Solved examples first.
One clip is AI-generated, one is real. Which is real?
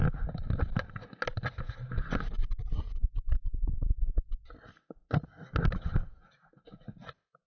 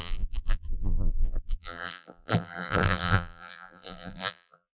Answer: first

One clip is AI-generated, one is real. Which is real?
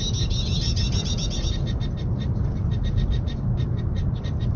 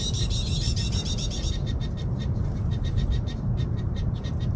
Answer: first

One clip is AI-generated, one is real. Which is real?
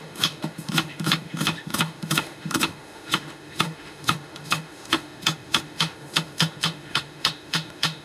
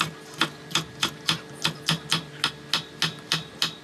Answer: second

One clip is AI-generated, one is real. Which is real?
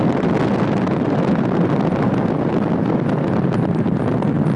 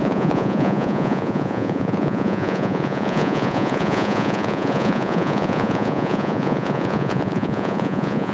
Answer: first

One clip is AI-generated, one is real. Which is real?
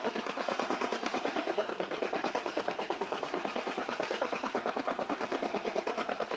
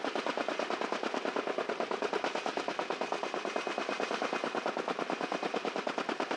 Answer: second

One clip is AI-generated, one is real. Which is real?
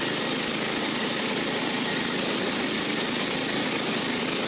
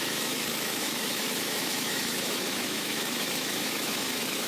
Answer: first